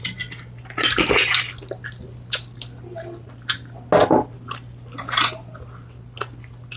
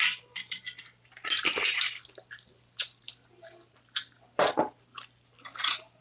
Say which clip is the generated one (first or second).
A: second